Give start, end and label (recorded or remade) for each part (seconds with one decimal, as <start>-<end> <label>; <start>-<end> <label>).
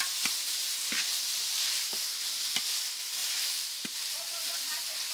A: 0.0-1.1 recorded; 1.1-1.9 remade; 1.9-3.2 recorded; 3.2-4.5 remade; 4.5-5.1 recorded